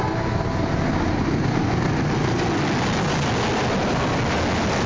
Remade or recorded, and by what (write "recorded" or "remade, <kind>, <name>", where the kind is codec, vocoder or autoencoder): recorded